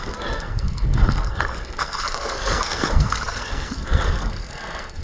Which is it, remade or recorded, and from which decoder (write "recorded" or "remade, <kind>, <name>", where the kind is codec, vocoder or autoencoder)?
remade, codec, SNAC